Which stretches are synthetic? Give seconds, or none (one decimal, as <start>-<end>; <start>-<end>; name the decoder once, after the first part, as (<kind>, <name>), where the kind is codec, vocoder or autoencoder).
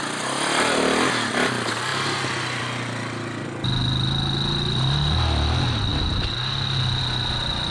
none